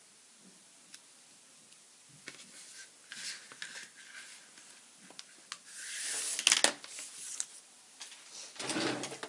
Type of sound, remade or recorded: recorded